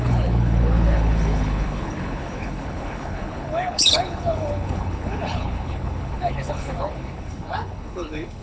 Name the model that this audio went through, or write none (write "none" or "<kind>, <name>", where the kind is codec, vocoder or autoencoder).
codec, HILCodec